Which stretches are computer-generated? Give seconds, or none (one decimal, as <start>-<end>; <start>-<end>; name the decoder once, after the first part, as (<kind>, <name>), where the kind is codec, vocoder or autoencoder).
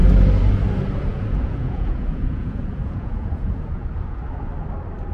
1.1-4.2 (vocoder, Vocos)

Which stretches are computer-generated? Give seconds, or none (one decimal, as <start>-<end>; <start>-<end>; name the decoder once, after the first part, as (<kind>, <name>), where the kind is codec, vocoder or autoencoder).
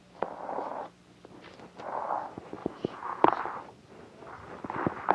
2.6-3.4 (vocoder, Vocos)